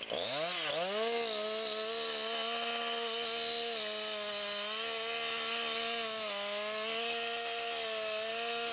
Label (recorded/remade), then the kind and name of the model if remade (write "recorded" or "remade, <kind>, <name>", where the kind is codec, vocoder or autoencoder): recorded